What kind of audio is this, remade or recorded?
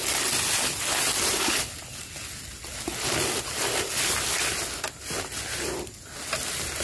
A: recorded